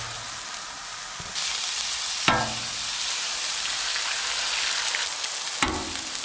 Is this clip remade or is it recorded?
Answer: recorded